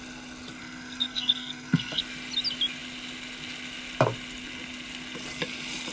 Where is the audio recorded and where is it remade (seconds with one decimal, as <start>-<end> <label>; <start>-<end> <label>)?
0.0-0.6 recorded; 0.6-2.0 remade; 2.0-5.9 recorded